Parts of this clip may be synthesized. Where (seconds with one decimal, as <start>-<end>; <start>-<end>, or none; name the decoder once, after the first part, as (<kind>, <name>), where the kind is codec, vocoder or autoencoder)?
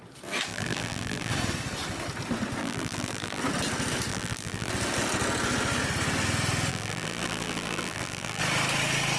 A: 0.5-1.3 (vocoder, BigVGAN v2); 2.6-3.4; 4.1-4.7; 6.7-8.4